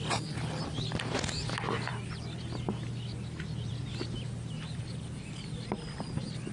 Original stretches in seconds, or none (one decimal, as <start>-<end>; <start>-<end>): 0.0-6.5

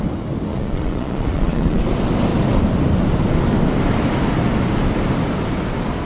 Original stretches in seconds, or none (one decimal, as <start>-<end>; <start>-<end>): 0.0-0.5; 1.8-6.1